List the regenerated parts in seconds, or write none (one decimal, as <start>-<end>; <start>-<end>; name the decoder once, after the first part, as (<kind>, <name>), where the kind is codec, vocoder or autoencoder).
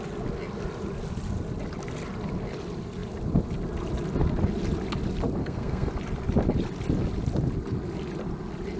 5.4-5.9 (codec, SNAC)